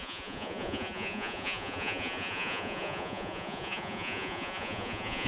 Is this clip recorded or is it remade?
remade